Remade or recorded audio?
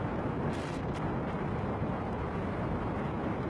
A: recorded